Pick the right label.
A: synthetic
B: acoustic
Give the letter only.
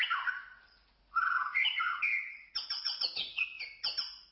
B